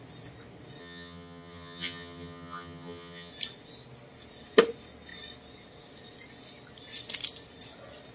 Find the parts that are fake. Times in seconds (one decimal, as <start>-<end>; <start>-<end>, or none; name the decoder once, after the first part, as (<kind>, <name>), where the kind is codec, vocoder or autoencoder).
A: 0.8-3.3 (vocoder, HiFi-GAN)